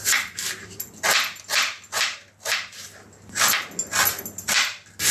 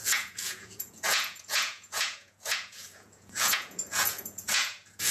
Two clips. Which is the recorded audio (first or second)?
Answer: first